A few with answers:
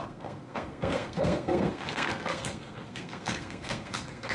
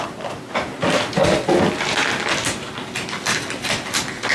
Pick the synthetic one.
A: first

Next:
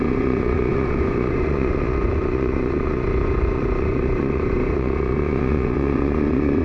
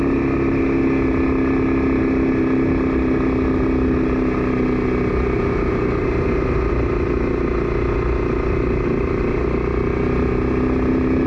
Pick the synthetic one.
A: first